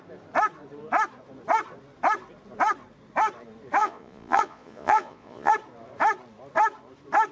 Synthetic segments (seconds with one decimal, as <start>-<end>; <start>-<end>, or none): 3.8-5.5